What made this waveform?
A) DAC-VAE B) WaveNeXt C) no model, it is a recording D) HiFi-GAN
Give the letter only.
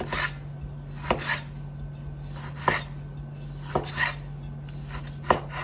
C